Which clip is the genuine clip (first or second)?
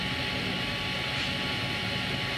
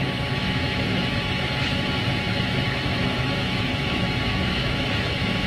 first